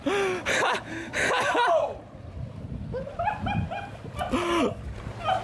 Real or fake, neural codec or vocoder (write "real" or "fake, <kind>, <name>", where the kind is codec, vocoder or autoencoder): real